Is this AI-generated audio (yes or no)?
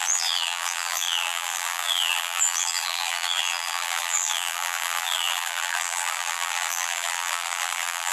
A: yes